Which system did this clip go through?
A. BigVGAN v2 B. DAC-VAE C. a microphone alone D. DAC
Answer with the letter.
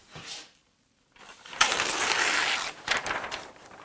A